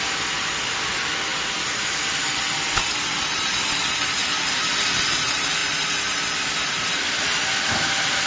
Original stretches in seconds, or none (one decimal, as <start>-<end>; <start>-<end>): 0.0-8.3